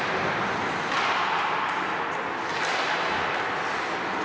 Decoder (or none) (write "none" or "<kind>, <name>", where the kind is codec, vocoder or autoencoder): none